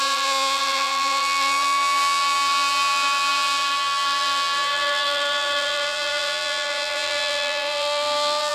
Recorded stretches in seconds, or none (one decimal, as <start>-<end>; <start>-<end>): none